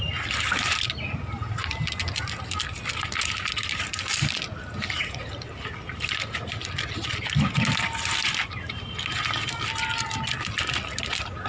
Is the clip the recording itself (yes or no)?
yes